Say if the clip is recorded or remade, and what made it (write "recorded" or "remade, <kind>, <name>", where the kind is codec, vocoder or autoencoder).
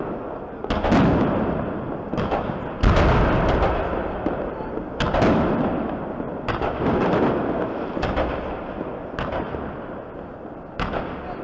recorded